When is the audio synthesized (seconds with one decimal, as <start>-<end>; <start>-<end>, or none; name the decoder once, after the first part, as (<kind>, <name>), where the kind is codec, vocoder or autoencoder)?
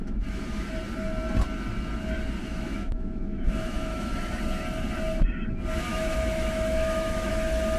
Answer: 0.0-0.7 (autoencoder, DAC-VAE); 2.4-4.3; 5.9-7.3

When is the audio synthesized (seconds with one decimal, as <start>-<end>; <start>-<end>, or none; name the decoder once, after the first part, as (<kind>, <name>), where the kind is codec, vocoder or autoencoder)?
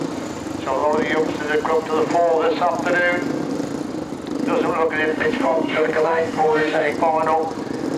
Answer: 5.1-6.9 (autoencoder, DAC-VAE)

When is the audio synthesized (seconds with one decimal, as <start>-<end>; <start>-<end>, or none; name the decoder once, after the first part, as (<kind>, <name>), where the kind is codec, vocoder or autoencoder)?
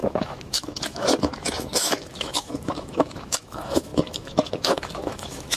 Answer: 0.0-5.6 (autoencoder, DAC-VAE)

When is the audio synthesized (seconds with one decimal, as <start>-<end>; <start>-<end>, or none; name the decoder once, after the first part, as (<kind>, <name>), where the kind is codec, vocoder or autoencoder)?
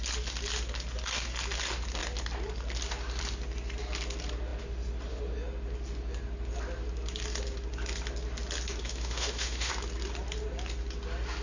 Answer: 8.8-9.7 (autoencoder, DAC-VAE)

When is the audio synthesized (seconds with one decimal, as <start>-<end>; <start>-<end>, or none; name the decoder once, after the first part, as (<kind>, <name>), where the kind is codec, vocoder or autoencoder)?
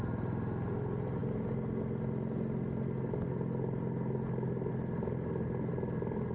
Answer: none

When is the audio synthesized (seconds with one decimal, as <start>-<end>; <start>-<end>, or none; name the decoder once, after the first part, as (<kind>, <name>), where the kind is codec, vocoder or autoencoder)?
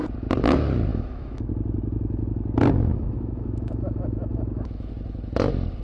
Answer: 0.9-1.5 (autoencoder, DAC-VAE); 2.9-4.9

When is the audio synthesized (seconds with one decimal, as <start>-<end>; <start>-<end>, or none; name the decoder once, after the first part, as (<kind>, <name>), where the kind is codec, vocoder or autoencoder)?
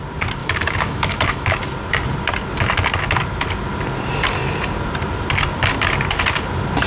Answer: 0.4-1.6 (autoencoder, DAC-VAE)